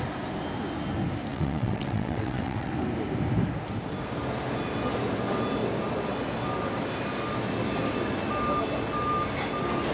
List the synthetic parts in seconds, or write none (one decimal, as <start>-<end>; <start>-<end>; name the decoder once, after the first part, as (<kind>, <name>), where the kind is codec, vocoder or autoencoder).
1.3-2.7 (vocoder, WaveNeXt)